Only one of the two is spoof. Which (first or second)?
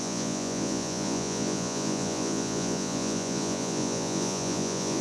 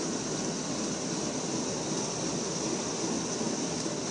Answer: first